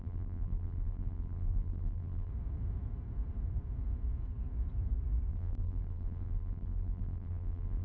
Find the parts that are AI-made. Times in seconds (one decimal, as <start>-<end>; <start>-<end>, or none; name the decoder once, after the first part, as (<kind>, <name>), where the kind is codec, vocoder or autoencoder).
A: 0.0-2.3 (vocoder, BigVGAN v2); 5.3-7.8